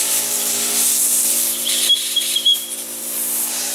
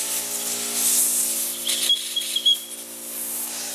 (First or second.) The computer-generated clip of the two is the first